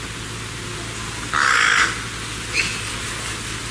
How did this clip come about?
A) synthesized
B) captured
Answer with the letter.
B